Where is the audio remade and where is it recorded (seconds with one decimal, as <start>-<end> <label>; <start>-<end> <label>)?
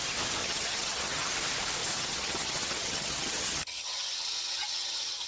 0.0-0.4 recorded; 0.4-1.3 remade; 1.3-1.8 recorded; 1.8-5.3 remade